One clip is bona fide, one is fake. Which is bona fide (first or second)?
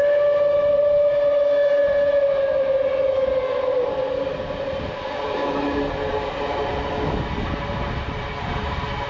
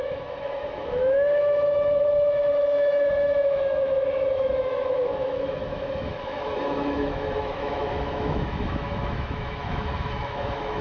first